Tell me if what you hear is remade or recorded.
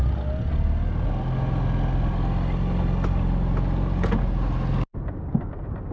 recorded